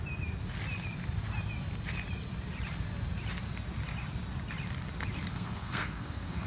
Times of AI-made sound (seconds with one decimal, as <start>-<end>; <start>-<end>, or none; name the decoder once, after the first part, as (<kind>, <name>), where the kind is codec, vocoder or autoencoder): 5.3-6.5 (codec, SNAC)